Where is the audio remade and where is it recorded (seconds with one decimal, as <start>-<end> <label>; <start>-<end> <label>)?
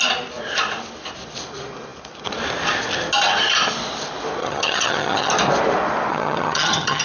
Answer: 0.0-4.4 recorded; 4.4-5.3 remade; 5.3-6.1 recorded; 6.1-7.0 remade